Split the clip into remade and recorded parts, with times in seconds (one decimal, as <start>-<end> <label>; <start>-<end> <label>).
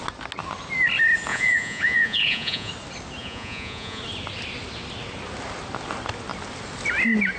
0.0-1.3 recorded; 1.3-2.7 remade; 2.7-3.2 recorded; 3.2-4.0 remade; 4.0-7.4 recorded